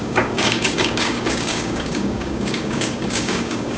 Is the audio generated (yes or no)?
yes